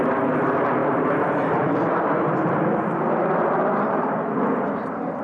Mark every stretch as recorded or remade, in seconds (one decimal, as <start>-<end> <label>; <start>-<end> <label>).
0.0-5.2 recorded